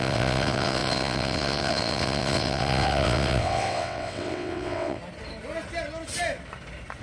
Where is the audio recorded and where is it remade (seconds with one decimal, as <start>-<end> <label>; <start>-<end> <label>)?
0.0-5.0 remade; 5.0-7.0 recorded